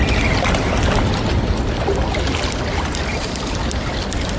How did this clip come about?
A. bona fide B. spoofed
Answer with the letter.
A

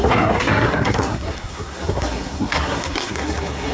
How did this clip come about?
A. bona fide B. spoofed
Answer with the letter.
B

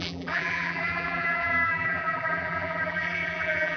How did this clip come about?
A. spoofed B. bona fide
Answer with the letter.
A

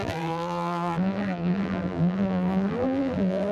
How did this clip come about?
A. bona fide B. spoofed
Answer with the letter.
B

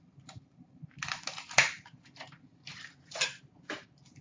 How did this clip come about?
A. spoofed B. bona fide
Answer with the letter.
A